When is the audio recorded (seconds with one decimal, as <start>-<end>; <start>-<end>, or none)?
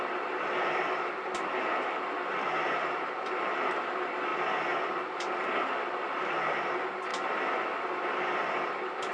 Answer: 0.0-9.1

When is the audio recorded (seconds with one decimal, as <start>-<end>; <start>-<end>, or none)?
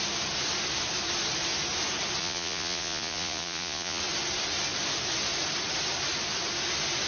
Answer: 0.0-2.2; 4.0-7.1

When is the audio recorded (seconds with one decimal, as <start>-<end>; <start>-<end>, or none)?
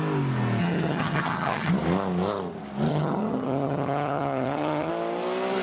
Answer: 0.0-0.6; 1.7-2.9; 4.9-5.6